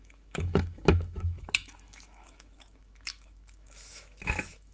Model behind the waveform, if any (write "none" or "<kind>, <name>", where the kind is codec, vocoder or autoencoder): autoencoder, DAC-VAE